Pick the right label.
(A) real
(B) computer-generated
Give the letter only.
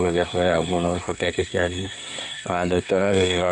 B